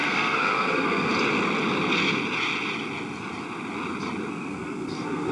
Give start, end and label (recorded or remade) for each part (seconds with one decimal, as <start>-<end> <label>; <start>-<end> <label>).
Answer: 0.0-1.1 remade; 1.1-4.3 recorded; 4.3-5.3 remade